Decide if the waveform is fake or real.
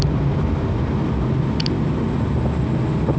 real